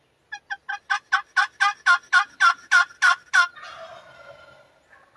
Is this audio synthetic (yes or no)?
no